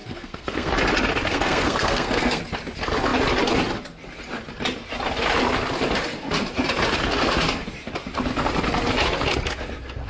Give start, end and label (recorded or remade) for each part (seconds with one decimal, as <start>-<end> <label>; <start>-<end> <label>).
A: 0.0-0.7 remade; 0.7-1.3 recorded; 1.3-2.4 remade; 2.4-10.1 recorded